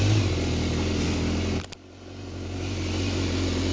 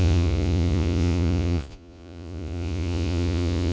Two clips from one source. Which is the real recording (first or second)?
first